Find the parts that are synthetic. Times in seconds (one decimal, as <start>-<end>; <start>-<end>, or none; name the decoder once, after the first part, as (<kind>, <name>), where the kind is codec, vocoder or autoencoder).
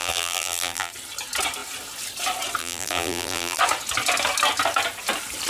0.0-0.9 (vocoder, BigVGAN v2); 2.6-3.6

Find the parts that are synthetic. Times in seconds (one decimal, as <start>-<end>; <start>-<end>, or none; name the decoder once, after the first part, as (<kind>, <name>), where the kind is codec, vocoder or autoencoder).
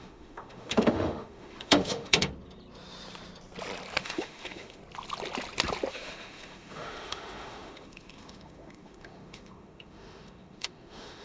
0.0-2.3 (autoencoder, DAC-VAE); 4.0-4.8; 5.9-11.2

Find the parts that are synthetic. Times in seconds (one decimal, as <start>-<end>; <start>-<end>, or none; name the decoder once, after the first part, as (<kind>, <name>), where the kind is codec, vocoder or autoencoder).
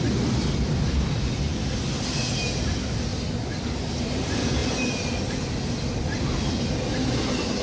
none